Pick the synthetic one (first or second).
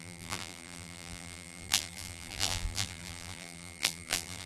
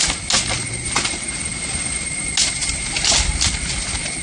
first